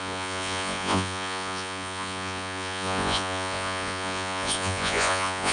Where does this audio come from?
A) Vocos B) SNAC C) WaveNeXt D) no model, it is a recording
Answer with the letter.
A